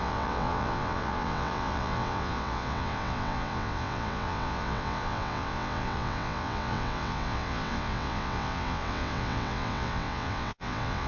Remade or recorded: remade